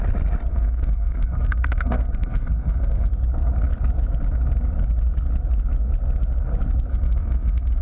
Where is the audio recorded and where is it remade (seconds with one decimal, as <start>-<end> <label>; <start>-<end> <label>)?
0.0-0.5 recorded; 0.5-3.1 remade; 3.1-6.9 recorded; 6.9-7.8 remade